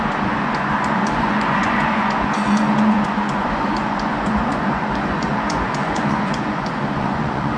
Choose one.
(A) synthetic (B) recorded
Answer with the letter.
A